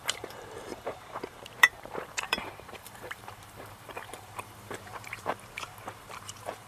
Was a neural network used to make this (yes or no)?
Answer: yes